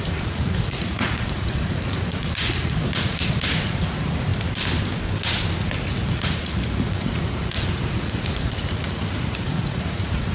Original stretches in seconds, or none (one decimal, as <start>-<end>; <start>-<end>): 4.3-5.9